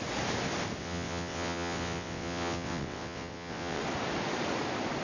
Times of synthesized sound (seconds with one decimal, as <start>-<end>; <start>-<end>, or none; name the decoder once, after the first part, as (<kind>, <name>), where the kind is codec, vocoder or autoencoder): 0.8-3.8 (vocoder, WaveNeXt)